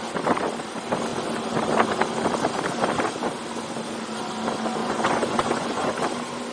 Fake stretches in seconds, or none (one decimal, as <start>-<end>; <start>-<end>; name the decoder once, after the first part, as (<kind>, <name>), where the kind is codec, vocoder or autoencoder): 4.8-5.9 (vocoder, Vocos)